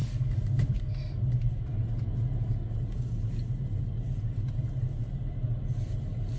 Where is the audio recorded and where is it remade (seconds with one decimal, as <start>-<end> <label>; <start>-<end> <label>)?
0.0-6.4 recorded